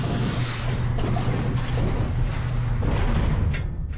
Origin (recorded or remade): recorded